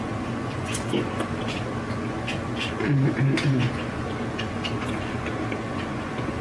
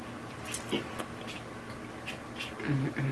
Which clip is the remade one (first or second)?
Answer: first